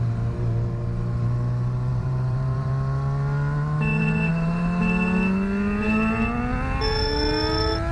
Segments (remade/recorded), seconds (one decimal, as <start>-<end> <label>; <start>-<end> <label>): 0.0-1.9 recorded; 1.9-2.7 remade; 2.7-4.3 recorded; 4.3-4.8 remade; 4.8-7.9 recorded